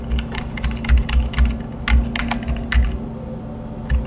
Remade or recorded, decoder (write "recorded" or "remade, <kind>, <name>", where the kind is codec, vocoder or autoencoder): recorded